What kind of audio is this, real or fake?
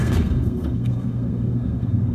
fake